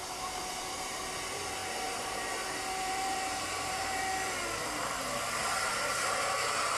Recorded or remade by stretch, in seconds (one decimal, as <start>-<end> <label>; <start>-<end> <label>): 0.0-0.8 remade; 0.8-1.6 recorded; 1.6-4.0 remade; 4.0-6.8 recorded

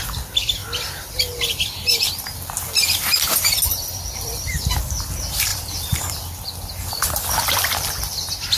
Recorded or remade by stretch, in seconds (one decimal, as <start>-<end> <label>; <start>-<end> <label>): 0.0-3.7 recorded; 3.7-4.8 remade; 4.8-5.5 recorded; 5.5-8.6 remade

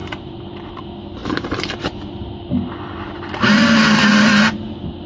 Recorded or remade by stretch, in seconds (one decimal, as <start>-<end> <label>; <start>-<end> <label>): 0.0-0.7 remade; 0.7-1.2 recorded; 1.2-2.5 remade; 2.5-5.1 recorded